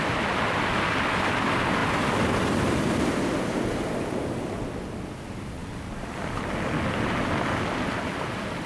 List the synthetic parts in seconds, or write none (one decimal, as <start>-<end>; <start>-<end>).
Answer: none